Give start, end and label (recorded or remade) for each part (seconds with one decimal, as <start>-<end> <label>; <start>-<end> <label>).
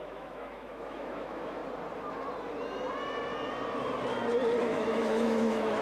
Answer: 0.0-1.6 remade; 1.6-4.6 recorded; 4.6-5.8 remade